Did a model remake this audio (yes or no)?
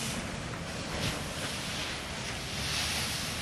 no